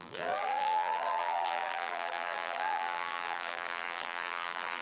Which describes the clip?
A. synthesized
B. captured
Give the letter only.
A